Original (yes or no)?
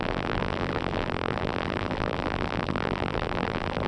no